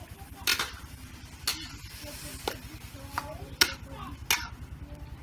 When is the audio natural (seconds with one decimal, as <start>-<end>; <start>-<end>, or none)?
0.0-5.2

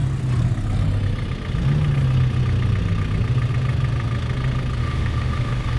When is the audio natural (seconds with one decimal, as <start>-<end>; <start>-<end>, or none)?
0.0-4.8

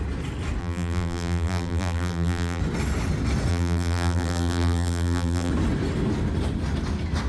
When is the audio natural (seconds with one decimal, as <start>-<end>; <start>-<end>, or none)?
0.0-0.6; 2.6-3.5; 5.5-7.3

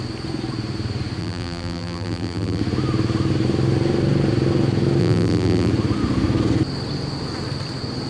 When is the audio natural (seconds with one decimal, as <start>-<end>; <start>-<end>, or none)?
0.0-1.2; 2.6-5.0; 5.7-8.1